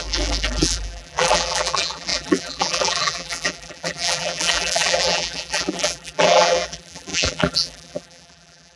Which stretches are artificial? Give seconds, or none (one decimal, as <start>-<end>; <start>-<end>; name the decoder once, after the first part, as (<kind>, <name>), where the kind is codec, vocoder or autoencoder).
0.0-8.8 (vocoder, BigVGAN v2)